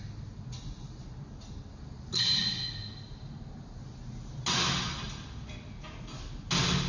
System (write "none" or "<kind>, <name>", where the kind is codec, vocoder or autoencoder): none